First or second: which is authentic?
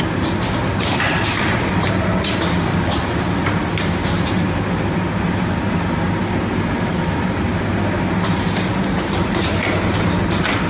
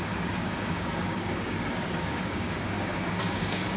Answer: first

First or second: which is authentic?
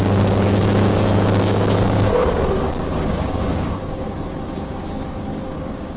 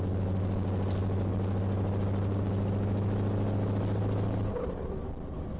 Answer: second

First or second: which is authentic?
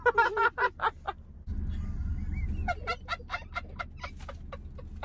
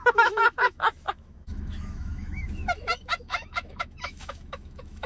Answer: first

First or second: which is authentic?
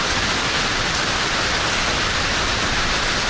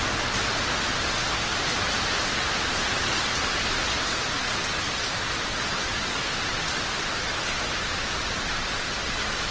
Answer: second